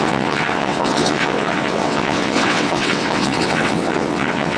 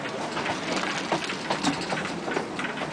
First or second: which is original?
second